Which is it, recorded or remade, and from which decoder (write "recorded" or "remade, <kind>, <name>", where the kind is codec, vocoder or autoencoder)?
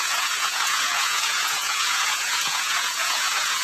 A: remade, vocoder, Vocos